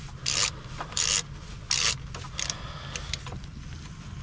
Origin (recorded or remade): recorded